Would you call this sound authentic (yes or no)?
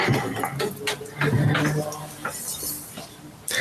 yes